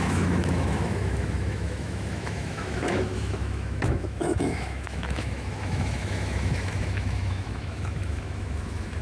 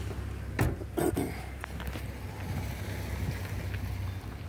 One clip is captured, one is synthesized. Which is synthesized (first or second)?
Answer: first